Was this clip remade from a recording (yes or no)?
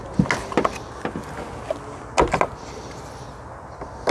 no